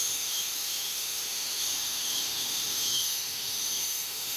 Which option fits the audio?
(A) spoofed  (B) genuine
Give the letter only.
A